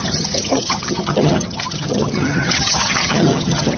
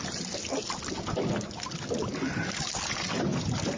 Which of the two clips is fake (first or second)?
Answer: first